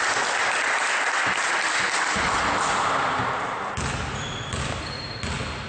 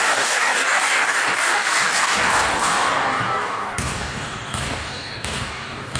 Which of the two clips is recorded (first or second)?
first